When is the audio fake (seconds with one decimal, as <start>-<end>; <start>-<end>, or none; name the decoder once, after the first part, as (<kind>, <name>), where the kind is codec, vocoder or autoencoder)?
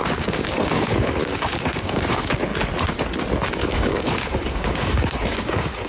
0.0-2.5 (codec, DAC); 3.5-5.9